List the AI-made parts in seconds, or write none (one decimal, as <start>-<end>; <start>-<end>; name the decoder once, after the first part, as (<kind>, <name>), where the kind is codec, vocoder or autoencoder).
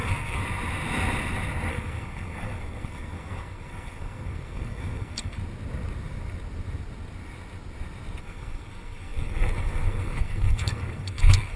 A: 0.0-0.4 (codec, SNAC); 1.7-5.4; 8.2-11.6